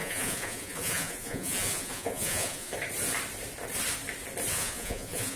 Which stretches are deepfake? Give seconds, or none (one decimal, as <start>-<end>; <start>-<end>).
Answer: 0.0-2.7; 4.5-5.4

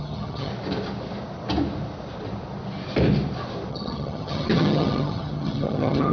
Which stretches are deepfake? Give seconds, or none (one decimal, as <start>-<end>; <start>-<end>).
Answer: 0.0-0.5; 3.7-6.1

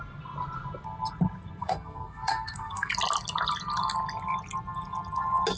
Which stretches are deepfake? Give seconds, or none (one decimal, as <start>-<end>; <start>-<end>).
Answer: 1.6-2.9

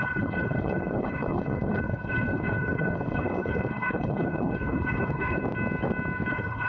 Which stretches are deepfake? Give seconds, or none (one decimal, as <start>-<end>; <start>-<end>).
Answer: 0.0-5.4; 6.3-6.7

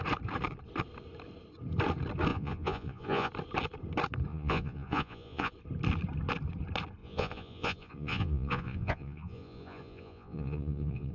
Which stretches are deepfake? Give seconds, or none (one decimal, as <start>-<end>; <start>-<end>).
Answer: 2.3-3.3; 4.3-5.5; 7.0-11.1

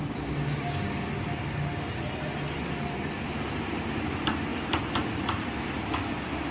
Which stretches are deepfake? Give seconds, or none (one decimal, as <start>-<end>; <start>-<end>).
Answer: none